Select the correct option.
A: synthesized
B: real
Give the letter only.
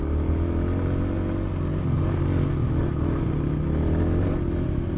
B